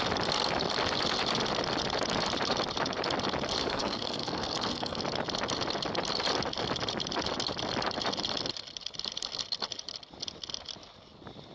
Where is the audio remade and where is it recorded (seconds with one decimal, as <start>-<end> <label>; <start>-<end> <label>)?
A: 0.0-3.6 recorded; 3.6-5.0 remade; 5.0-11.5 recorded